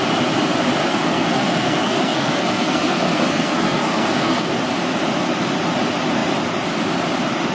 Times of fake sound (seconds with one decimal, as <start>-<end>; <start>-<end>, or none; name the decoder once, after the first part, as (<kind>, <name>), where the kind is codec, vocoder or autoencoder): 0.8-4.5 (codec, SNAC)